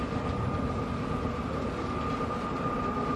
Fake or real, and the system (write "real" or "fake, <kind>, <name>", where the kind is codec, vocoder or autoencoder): real